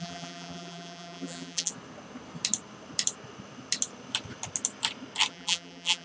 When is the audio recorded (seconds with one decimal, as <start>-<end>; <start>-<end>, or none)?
1.7-5.3